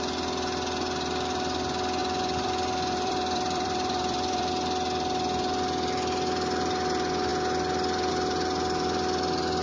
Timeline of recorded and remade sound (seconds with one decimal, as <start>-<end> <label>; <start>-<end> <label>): 0.0-2.0 recorded; 2.0-4.5 remade; 4.5-9.6 recorded